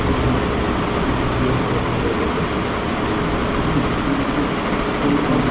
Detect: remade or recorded recorded